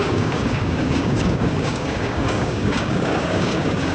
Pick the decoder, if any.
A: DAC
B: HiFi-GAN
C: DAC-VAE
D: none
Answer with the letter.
A